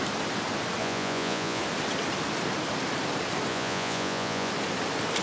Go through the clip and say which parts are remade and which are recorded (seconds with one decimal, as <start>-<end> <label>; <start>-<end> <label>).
0.0-0.8 recorded; 0.8-1.6 remade; 1.6-3.5 recorded; 3.5-4.5 remade; 4.5-5.2 recorded